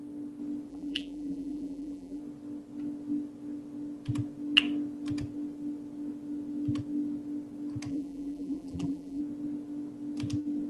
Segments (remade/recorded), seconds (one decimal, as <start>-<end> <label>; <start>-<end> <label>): 0.0-0.7 recorded; 0.7-2.2 remade; 2.2-7.9 recorded; 7.9-9.2 remade; 9.2-10.7 recorded